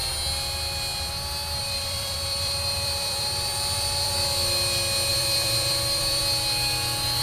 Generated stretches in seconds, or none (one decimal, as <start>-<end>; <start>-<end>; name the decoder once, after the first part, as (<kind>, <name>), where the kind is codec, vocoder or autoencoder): 1.6-4.1 (vocoder, BigVGAN v2); 5.1-6.2